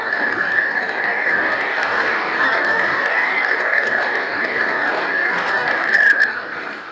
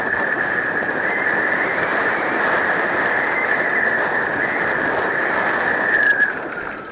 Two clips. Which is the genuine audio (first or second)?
second